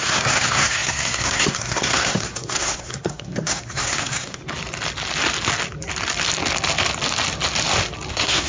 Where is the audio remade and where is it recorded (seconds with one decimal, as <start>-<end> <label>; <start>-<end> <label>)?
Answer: 0.0-4.4 remade; 4.4-8.1 recorded; 8.1-8.5 remade